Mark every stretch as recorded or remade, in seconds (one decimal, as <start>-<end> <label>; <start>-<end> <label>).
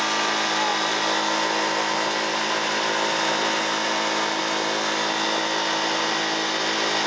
0.0-7.1 recorded